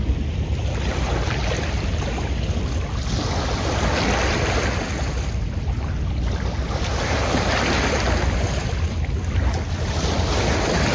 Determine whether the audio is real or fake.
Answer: real